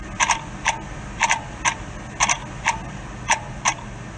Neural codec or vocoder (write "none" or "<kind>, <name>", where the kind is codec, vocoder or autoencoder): none